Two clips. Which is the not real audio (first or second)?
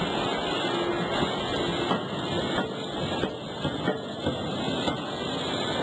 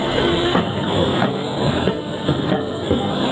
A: second